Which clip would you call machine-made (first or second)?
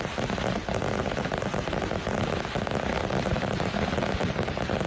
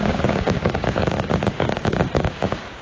second